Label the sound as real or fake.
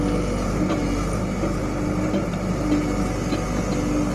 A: real